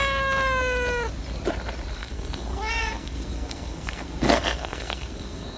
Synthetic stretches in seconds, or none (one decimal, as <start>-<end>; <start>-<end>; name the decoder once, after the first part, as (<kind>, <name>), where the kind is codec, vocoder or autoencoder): 2.0-5.6 (codec, SNAC)